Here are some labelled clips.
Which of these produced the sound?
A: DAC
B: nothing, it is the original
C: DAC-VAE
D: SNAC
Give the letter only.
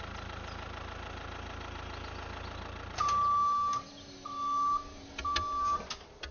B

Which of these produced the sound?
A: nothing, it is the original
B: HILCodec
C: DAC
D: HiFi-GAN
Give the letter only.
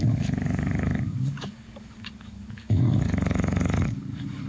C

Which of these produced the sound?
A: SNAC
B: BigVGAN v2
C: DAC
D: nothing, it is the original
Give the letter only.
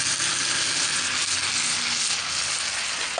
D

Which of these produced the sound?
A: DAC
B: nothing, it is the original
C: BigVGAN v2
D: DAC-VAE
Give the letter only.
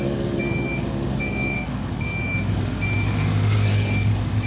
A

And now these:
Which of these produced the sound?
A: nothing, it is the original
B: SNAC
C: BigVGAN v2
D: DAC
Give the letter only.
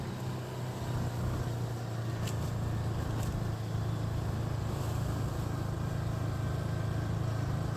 A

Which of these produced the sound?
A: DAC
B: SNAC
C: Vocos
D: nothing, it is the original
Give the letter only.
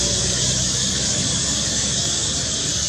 A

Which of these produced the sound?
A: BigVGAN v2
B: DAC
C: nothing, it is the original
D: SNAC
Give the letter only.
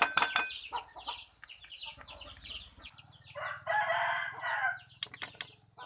C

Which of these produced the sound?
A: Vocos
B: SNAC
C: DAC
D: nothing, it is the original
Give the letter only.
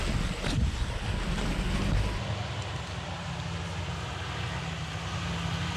D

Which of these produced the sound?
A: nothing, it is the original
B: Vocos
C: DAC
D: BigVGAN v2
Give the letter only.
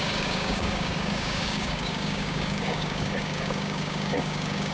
C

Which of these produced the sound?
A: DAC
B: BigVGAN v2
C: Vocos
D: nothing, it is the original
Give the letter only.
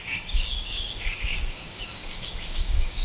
A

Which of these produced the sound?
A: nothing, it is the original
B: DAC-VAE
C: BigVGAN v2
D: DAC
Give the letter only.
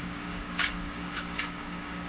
D